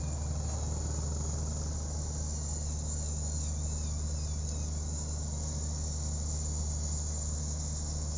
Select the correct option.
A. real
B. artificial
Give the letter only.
A